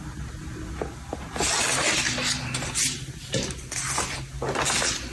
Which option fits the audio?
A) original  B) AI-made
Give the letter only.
A